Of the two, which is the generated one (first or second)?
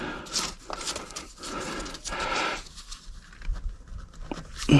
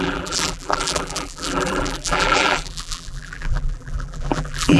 second